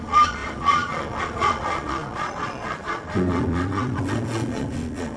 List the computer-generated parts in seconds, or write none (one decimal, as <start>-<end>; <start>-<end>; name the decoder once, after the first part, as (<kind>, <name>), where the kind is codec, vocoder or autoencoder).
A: 0.0-5.2 (vocoder, Vocos)